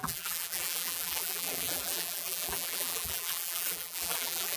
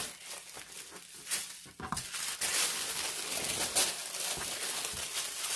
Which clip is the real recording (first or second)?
second